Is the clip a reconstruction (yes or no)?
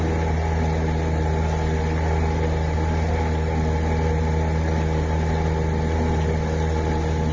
no